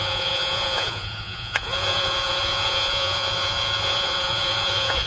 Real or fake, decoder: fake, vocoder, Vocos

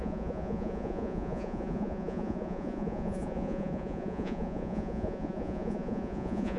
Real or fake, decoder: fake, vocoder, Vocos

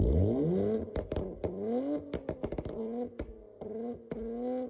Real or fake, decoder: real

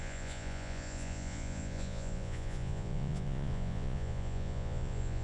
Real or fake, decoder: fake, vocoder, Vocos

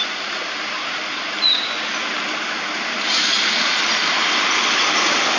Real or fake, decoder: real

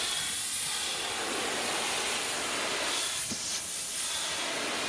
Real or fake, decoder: real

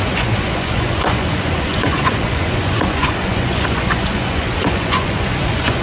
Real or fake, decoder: fake, vocoder, Vocos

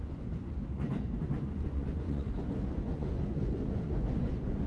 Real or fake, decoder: fake, vocoder, Vocos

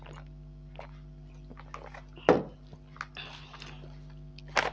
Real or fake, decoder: real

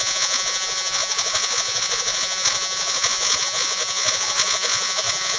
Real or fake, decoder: fake, vocoder, Vocos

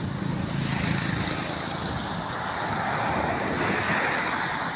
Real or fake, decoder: real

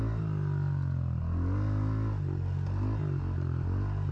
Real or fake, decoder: real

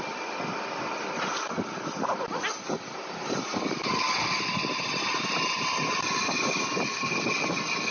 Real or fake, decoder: real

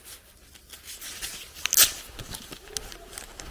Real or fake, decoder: real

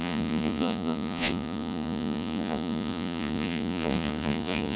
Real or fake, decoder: fake, vocoder, Vocos